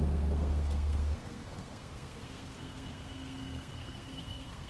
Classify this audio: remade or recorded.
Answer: remade